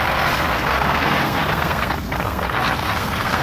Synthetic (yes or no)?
yes